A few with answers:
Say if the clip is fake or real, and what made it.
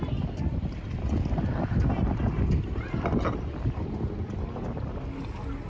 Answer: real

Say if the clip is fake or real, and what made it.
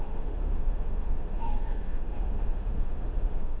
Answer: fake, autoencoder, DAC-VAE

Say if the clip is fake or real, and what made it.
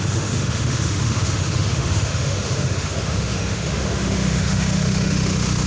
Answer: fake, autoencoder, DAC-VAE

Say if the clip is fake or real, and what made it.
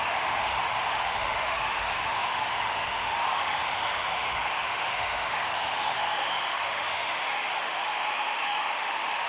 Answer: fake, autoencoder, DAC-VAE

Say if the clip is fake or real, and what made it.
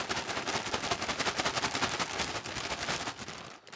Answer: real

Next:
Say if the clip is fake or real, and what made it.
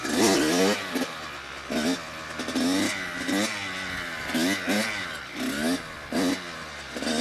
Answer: real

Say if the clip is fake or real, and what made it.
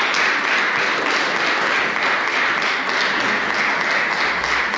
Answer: real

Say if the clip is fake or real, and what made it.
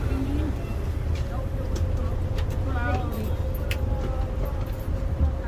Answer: real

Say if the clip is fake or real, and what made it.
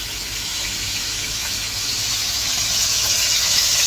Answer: fake, autoencoder, DAC-VAE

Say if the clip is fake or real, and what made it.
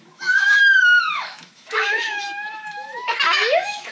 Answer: fake, autoencoder, DAC-VAE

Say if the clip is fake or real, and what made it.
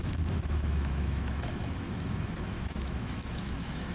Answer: fake, autoencoder, DAC-VAE